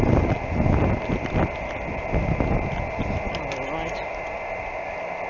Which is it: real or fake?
real